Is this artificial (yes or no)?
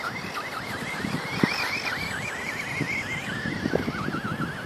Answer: no